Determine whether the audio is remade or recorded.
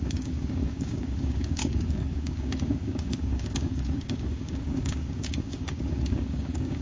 remade